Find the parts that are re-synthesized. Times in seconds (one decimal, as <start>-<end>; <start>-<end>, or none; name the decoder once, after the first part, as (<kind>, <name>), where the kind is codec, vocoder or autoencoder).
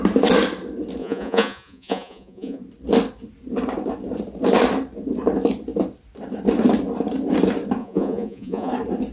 1.0-2.6 (vocoder, Vocos); 7.8-8.7